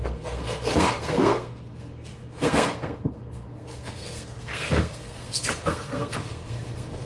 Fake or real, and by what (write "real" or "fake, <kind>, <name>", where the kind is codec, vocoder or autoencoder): fake, codec, SNAC